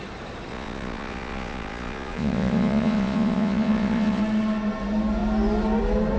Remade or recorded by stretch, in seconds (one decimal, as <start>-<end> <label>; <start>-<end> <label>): 0.0-0.5 recorded; 0.5-4.2 remade; 4.2-6.2 recorded

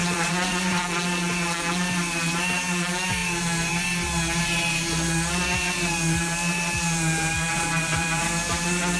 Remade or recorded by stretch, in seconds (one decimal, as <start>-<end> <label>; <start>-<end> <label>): 0.0-0.8 remade; 0.8-9.0 recorded

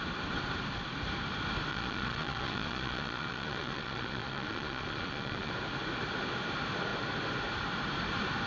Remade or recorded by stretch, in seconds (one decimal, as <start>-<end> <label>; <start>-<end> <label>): 0.0-1.7 recorded; 1.7-5.5 remade; 5.5-8.5 recorded

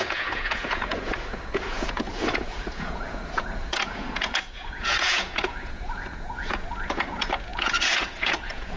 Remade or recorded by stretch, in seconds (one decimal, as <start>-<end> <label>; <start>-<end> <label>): 0.0-8.8 remade

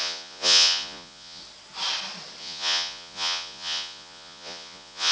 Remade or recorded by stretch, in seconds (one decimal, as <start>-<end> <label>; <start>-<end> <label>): 0.0-1.4 remade; 1.4-2.4 recorded; 2.4-5.1 remade